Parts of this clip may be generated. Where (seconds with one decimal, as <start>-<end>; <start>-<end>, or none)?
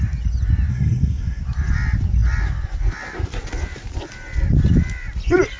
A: 0.7-1.4